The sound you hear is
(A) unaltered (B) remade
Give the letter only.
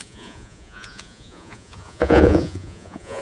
B